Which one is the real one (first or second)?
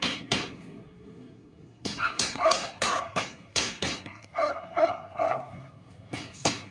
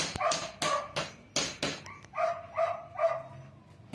second